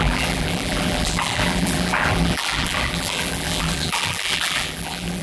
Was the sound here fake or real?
fake